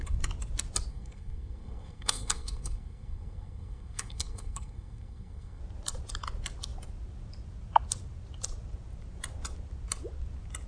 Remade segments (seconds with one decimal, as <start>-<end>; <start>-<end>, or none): 0.9-5.6